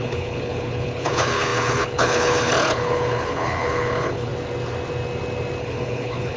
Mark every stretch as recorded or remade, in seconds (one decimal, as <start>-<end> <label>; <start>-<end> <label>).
0.0-4.3 remade; 4.3-5.6 recorded; 5.6-6.4 remade